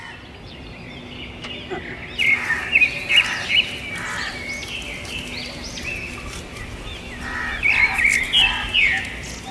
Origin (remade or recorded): recorded